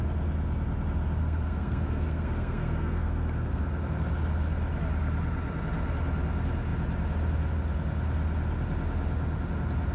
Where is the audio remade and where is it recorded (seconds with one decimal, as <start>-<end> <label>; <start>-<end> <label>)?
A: 0.0-1.2 recorded; 1.2-3.6 remade; 3.6-9.9 recorded

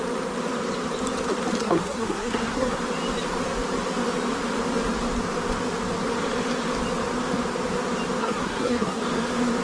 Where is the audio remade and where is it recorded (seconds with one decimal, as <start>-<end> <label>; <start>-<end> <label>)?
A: 0.0-1.6 recorded; 1.6-2.8 remade; 2.8-8.2 recorded; 8.2-9.0 remade; 9.0-9.6 recorded

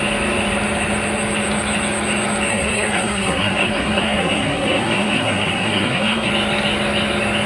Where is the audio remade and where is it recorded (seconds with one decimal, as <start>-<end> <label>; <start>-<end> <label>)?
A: 0.0-2.5 recorded; 2.5-6.3 remade; 6.3-7.5 recorded

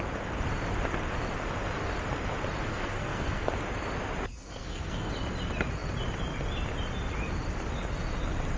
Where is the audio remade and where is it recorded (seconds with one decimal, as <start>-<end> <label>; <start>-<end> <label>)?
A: 0.0-2.7 recorded; 2.7-3.5 remade; 3.5-4.3 recorded; 4.3-5.1 remade; 5.1-8.6 recorded

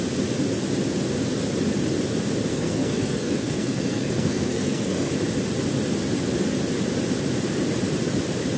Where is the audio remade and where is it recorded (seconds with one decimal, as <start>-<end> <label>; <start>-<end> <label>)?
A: 0.0-2.5 recorded; 2.5-5.1 remade; 5.1-8.6 recorded

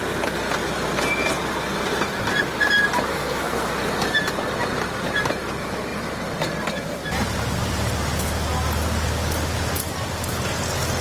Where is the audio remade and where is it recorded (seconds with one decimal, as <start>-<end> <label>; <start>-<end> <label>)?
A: 0.0-3.1 recorded; 3.1-3.7 remade; 3.7-11.0 recorded

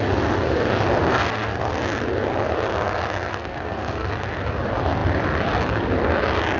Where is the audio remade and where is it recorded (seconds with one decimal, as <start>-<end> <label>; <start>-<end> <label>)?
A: 0.0-1.0 recorded; 1.0-1.7 remade; 1.7-3.3 recorded; 3.3-4.1 remade; 4.1-6.6 recorded